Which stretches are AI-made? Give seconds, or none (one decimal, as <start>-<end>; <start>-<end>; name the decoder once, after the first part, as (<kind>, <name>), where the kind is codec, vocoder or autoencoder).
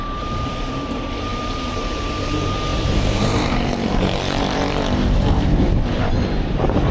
0.0-6.9 (vocoder, BigVGAN v2)